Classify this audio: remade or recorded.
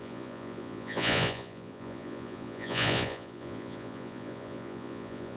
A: remade